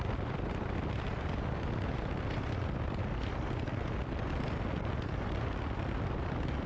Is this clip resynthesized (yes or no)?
no